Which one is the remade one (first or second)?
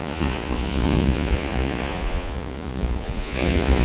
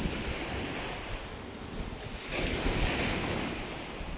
first